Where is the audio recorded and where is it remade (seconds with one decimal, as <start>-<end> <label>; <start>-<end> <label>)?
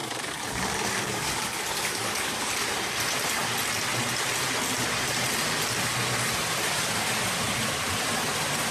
0.0-2.5 remade; 2.5-8.7 recorded